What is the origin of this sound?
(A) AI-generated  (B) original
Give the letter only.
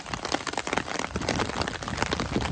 B